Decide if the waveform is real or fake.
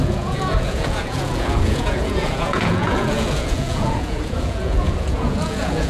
fake